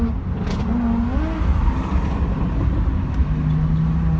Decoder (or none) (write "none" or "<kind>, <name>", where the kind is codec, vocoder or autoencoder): none